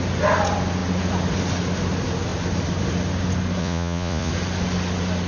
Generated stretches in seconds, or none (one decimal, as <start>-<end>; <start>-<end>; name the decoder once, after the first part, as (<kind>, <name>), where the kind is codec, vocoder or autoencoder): 3.6-4.3 (vocoder, Vocos)

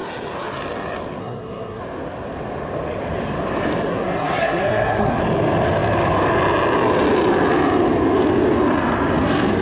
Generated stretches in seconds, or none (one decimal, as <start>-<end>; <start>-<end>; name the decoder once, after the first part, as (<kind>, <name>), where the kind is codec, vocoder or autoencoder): 1.2-1.8 (codec, SNAC); 3.9-5.2

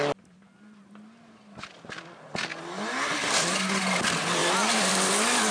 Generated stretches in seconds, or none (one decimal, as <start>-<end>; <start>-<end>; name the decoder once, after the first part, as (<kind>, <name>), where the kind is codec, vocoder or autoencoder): none

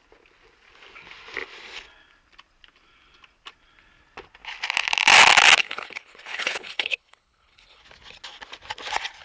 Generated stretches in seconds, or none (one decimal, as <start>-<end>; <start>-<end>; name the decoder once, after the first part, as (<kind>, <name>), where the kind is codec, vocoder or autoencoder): 5.6-7.8 (codec, HILCodec)

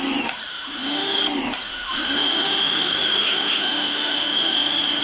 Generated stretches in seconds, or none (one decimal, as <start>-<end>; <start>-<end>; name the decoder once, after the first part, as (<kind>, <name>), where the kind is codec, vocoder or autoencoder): 0.5-1.2 (autoencoder, DAC-VAE); 1.7-5.0

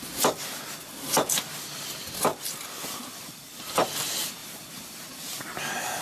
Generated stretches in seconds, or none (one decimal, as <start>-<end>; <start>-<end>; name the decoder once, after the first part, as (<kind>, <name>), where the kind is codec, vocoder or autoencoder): 4.4-5.2 (vocoder, BigVGAN v2)

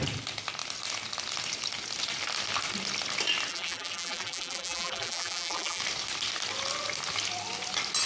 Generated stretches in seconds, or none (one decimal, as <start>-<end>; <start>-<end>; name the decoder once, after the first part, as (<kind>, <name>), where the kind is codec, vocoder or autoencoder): 3.5-5.8 (vocoder, BigVGAN v2)